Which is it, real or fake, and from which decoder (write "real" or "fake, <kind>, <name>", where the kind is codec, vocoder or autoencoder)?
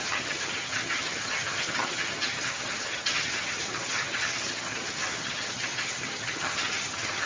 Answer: fake, vocoder, HiFi-GAN